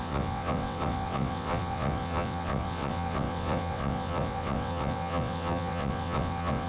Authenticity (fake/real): fake